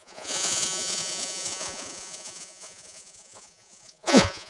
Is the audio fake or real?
fake